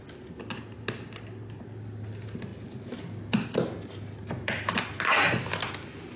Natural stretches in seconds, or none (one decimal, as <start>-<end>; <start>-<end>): 0.0-6.2